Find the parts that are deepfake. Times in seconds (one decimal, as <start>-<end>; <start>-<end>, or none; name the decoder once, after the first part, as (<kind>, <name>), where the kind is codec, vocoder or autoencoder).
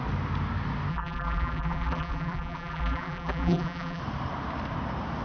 0.9-4.0 (vocoder, BigVGAN v2)